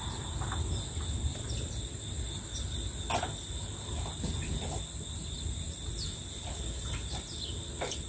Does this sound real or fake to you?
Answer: real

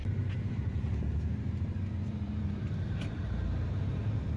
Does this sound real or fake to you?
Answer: fake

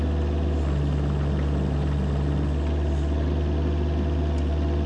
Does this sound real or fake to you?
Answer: real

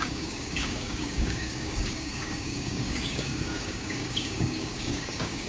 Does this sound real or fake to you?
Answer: fake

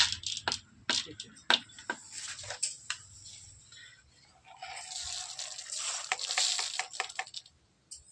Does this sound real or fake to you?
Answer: real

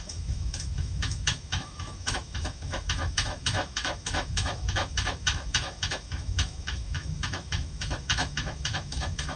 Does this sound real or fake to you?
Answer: fake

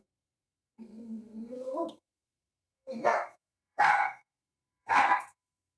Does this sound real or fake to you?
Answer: fake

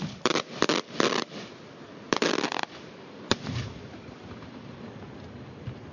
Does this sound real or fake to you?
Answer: fake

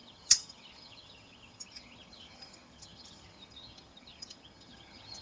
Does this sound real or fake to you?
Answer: fake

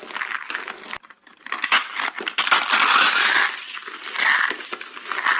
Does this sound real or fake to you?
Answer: real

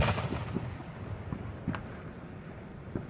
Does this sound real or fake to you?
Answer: real